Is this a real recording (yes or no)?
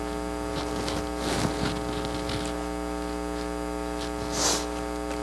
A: yes